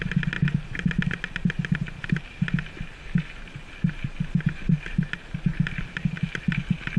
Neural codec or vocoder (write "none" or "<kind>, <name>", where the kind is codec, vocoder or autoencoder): none